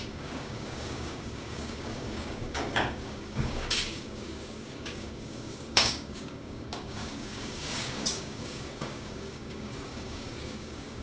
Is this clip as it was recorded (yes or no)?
no